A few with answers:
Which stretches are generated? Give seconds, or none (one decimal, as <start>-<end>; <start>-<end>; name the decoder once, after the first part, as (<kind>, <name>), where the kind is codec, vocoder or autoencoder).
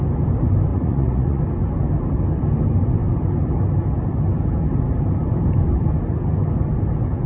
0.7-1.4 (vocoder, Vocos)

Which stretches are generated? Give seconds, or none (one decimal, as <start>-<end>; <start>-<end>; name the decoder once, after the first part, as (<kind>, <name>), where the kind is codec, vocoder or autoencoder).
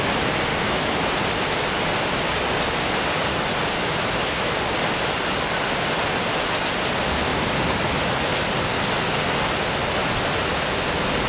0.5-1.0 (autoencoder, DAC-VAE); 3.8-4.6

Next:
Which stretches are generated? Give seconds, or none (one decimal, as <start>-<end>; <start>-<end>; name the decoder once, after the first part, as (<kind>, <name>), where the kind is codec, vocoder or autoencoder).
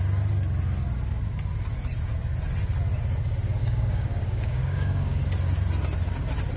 3.6-5.2 (codec, DAC)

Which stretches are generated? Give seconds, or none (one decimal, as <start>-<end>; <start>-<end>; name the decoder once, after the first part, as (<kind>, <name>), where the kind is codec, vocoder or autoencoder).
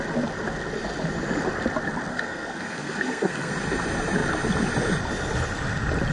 2.1-3.5 (codec, SNAC)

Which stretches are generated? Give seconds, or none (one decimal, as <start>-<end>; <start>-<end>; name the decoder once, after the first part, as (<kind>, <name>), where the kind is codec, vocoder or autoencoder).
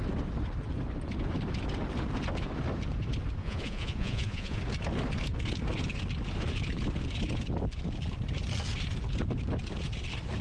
3.4-4.6 (vocoder, Vocos)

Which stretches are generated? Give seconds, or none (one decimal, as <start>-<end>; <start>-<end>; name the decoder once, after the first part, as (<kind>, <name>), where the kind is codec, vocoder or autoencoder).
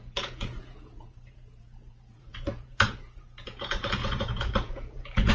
0.0-5.3 (vocoder, Vocos)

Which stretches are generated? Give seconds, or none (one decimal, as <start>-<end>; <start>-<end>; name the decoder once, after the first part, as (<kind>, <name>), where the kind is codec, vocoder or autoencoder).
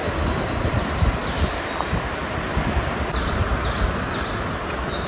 none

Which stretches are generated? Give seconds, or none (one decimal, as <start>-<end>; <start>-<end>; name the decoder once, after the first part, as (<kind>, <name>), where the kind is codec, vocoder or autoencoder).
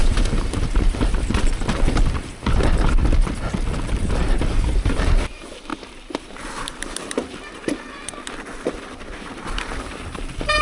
0.0-3.0 (vocoder, BigVGAN v2); 4.1-10.6